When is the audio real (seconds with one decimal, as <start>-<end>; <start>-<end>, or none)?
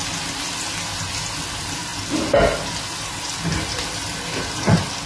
0.0-5.1